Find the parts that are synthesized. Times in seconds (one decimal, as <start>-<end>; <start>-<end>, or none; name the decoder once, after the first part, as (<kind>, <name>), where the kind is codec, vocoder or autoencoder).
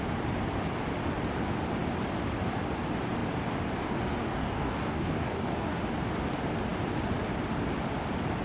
4.2-5.8 (codec, DAC)